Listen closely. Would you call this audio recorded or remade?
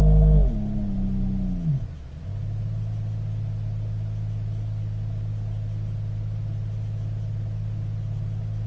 recorded